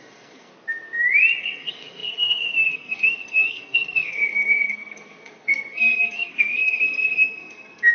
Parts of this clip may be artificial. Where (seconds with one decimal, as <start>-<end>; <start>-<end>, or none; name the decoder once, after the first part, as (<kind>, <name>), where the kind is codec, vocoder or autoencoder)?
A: 0.0-0.5 (codec, SNAC); 1.4-7.9